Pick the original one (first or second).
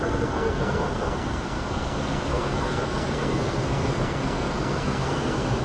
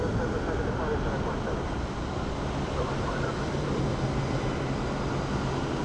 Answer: second